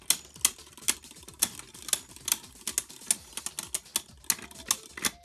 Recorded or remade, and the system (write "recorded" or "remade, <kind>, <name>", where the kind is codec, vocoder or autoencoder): recorded